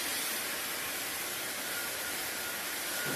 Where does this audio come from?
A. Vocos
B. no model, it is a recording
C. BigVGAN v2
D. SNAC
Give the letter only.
C